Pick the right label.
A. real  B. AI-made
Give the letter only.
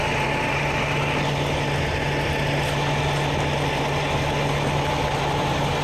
A